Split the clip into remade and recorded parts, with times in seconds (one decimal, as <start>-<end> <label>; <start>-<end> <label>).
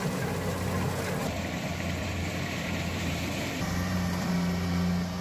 0.0-1.2 recorded; 1.2-4.3 remade; 4.3-5.2 recorded